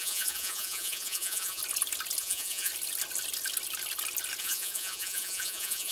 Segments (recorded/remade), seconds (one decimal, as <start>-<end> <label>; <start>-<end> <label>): 0.0-1.6 remade; 1.6-2.2 recorded; 2.2-2.7 remade; 2.7-4.4 recorded; 4.4-5.9 remade